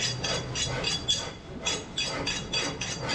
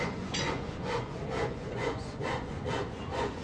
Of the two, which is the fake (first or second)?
second